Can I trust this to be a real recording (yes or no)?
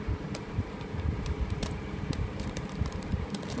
no